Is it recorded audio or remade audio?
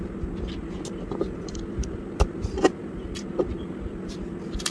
recorded